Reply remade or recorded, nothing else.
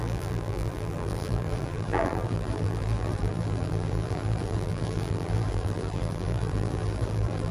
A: remade